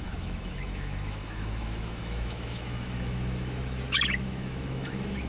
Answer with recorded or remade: remade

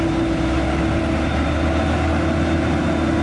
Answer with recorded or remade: recorded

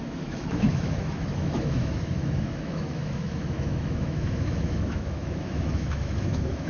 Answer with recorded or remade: remade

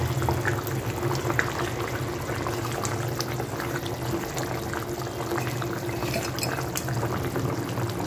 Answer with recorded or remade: recorded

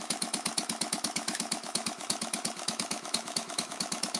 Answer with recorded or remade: remade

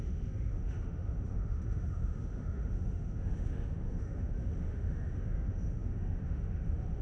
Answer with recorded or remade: remade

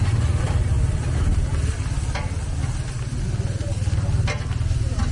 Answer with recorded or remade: recorded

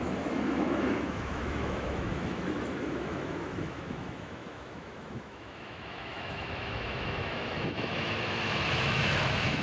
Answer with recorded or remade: remade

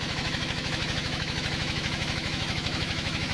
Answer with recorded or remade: remade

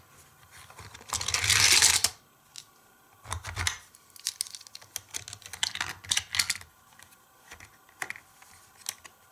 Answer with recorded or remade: recorded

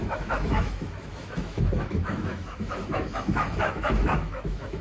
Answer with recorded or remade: remade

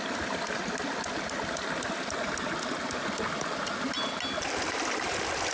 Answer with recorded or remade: recorded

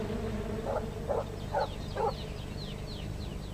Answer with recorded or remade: recorded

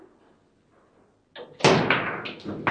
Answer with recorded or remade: recorded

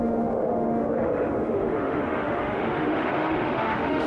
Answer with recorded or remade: remade